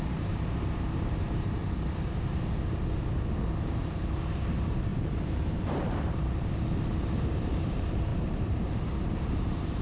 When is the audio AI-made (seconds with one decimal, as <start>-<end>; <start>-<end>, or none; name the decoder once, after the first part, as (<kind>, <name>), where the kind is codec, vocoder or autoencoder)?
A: 0.0-1.6 (vocoder, BigVGAN v2); 3.6-9.8